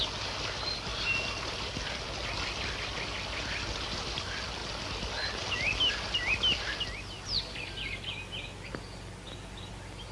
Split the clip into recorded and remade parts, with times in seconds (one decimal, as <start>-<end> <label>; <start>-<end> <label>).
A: 0.0-10.1 recorded